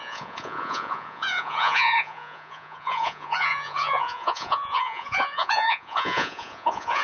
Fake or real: fake